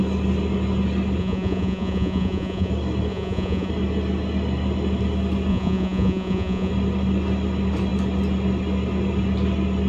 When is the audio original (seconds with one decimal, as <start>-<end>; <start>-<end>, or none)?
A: 0.0-1.2; 2.7-3.1; 3.7-5.5; 6.7-9.9